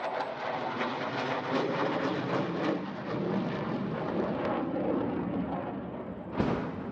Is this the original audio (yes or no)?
yes